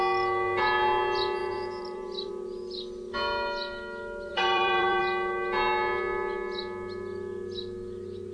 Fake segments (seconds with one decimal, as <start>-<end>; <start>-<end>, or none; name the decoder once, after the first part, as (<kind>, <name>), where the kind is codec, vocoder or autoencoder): 1.4-2.3 (vocoder, BigVGAN v2); 4.3-5.0

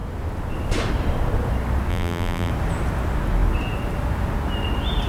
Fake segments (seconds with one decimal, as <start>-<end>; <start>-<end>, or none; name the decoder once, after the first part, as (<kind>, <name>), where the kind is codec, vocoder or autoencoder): 1.9-2.5 (vocoder, BigVGAN v2)

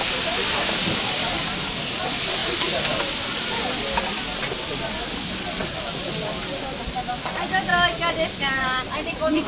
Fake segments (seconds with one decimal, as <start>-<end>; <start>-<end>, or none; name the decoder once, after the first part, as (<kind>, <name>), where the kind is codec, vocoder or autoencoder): 0.0-5.6 (vocoder, BigVGAN v2); 7.1-7.7; 8.6-9.5

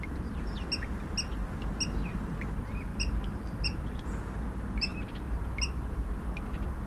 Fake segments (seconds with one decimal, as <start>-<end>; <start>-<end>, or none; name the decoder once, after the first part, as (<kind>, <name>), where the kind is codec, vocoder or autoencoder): 2.9-3.8 (vocoder, BigVGAN v2)

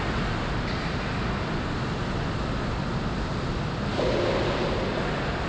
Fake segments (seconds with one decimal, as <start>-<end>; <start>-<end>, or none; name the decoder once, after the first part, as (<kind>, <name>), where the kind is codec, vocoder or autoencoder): none

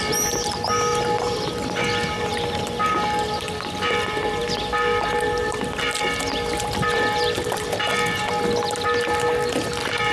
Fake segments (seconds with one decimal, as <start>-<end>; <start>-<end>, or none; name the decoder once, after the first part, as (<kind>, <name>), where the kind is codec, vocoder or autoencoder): 0.9-3.9 (vocoder, BigVGAN v2); 4.4-8.2

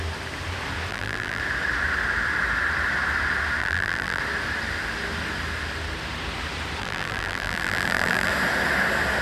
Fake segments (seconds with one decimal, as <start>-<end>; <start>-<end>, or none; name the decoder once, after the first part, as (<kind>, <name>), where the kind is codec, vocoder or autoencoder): 0.9-1.4 (vocoder, BigVGAN v2); 3.6-4.2; 6.8-8.3